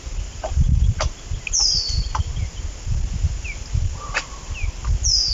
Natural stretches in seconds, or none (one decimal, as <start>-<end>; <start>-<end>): 0.0-5.3